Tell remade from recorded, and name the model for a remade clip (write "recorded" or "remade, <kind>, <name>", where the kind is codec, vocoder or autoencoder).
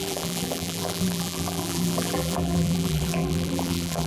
remade, vocoder, BigVGAN v2